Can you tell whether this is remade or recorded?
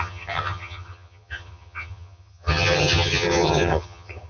remade